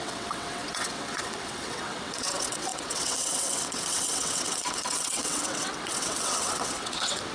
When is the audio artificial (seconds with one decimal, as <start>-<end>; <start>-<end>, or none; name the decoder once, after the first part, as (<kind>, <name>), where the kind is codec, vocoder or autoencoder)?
0.0-7.3 (vocoder, WaveNeXt)